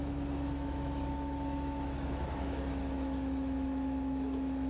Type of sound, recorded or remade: remade